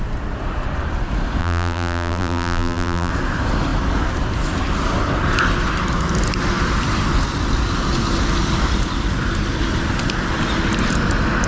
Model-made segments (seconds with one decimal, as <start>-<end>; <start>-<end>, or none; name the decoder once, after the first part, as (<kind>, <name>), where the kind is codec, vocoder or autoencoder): 1.4-3.1 (vocoder, BigVGAN v2)